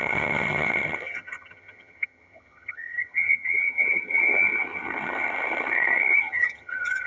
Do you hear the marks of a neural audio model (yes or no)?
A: yes